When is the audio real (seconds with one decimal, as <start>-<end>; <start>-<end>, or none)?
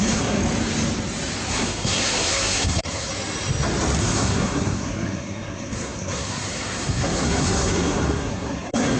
0.4-1.5; 3.1-4.0